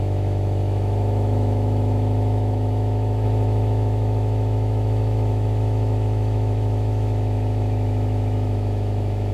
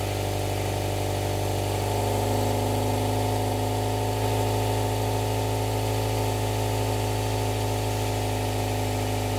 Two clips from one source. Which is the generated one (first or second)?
first